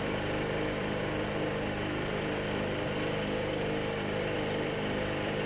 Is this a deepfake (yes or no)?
yes